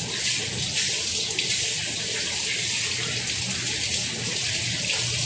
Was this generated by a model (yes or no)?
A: no